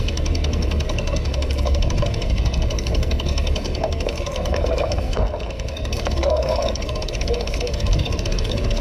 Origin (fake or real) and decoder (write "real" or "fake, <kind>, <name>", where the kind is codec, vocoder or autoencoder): fake, codec, SNAC